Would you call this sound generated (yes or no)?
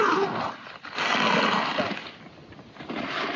no